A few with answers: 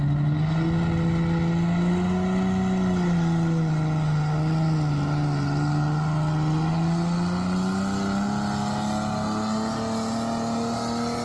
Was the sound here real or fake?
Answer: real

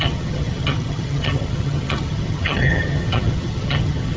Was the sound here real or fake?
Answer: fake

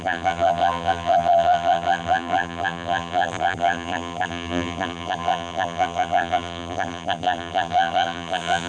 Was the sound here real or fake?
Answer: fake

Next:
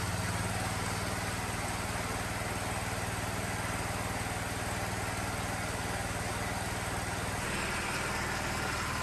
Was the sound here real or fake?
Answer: real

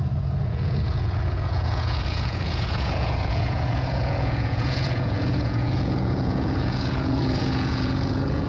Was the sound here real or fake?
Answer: fake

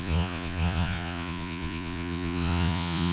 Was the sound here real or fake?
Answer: fake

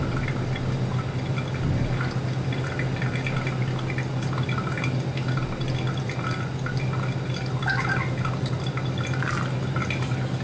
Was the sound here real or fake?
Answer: fake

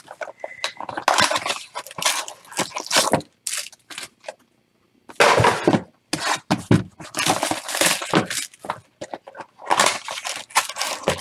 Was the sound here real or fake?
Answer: real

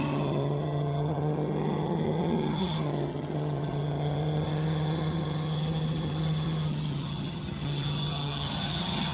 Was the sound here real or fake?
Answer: fake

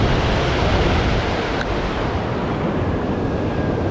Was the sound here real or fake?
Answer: real